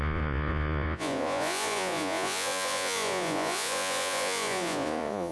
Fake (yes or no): yes